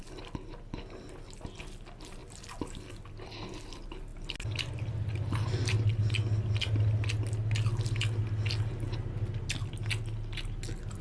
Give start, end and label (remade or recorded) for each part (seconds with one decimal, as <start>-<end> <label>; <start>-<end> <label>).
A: 0.0-11.0 recorded

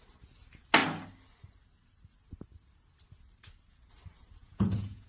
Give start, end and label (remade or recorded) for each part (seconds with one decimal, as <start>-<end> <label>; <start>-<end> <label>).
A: 0.0-4.4 recorded; 4.4-5.1 remade

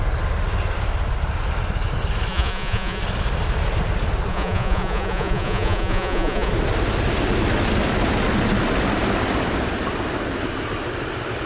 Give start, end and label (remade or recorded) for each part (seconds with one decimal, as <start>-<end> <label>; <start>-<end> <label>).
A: 0.0-2.3 recorded; 2.3-3.0 remade; 3.0-4.3 recorded; 4.3-6.5 remade; 6.5-11.5 recorded

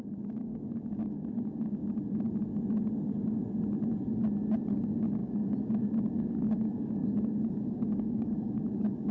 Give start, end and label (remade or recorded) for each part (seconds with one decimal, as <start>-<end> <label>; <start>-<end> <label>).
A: 0.0-1.8 remade; 1.8-4.7 recorded; 4.7-9.1 remade

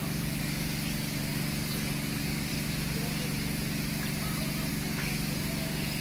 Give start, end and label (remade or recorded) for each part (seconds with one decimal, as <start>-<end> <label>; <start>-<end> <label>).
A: 0.0-2.5 remade; 2.5-4.7 recorded; 4.7-6.0 remade

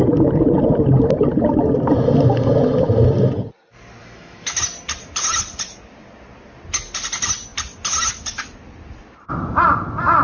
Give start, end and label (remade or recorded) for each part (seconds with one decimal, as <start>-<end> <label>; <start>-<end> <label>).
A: 0.0-4.0 recorded; 4.0-4.6 remade; 4.6-10.2 recorded